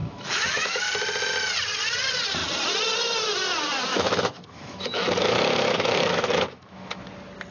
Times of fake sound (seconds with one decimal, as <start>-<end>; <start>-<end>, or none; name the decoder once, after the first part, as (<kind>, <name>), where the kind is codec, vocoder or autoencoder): 0.0-0.8 (autoencoder, DAC-VAE); 3.9-7.0